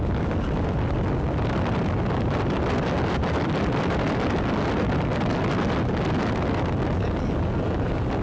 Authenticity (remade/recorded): recorded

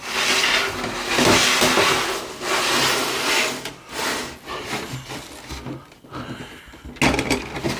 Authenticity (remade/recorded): recorded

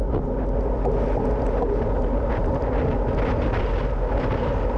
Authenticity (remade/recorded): recorded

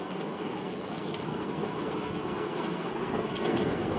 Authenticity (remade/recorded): remade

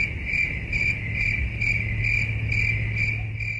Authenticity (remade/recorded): recorded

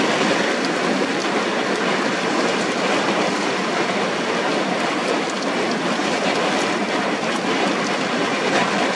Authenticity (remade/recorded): recorded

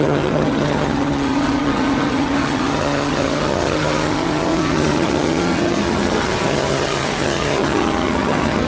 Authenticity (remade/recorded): remade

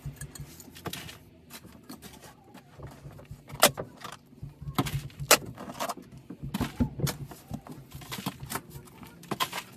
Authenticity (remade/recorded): recorded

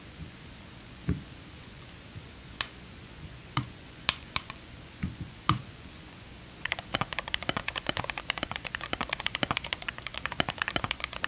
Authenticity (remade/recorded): remade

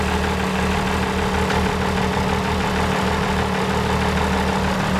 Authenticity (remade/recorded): recorded